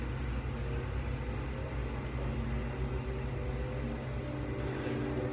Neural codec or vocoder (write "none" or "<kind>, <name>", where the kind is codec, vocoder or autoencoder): none